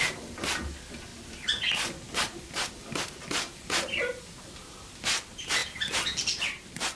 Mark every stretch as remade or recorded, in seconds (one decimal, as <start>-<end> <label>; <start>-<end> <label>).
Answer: 0.0-7.0 recorded